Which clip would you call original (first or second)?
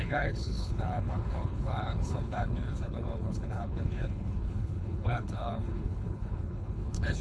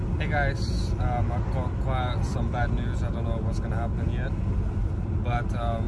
second